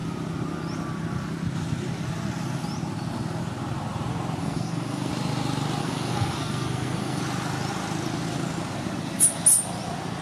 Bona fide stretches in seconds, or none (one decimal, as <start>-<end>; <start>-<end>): 0.0-4.4; 5.1-5.8; 7.2-10.2